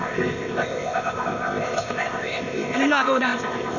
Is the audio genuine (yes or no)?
no